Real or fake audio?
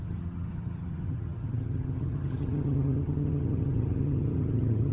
fake